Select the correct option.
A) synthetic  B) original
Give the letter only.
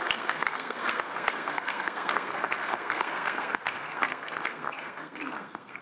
A